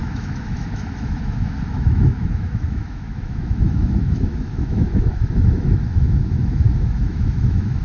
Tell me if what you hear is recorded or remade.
remade